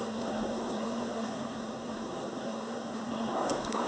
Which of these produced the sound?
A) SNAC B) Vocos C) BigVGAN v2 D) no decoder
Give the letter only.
A